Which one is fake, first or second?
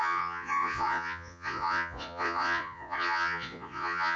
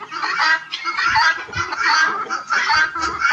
first